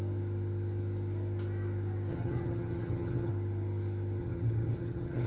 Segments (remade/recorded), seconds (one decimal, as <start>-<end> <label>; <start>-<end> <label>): 0.0-2.1 recorded; 2.1-3.3 remade; 3.3-4.2 recorded; 4.2-5.3 remade